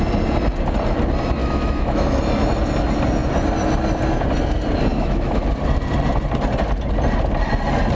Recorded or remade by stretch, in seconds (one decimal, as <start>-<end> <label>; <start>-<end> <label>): 0.0-1.4 recorded; 1.4-2.2 remade; 2.2-4.9 recorded; 4.9-5.4 remade; 5.4-7.9 recorded